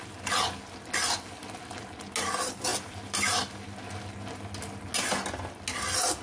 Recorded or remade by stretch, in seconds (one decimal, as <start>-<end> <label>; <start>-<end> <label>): 0.0-6.2 recorded